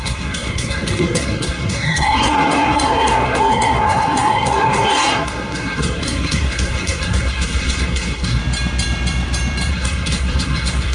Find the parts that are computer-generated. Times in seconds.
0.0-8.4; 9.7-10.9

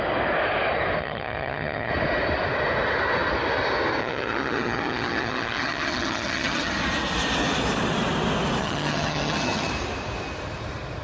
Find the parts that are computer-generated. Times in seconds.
1.0-1.9; 4.0-6.7; 8.6-9.7

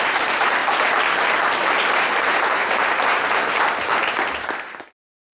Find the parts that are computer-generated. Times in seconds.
0.0-0.6; 1.9-5.3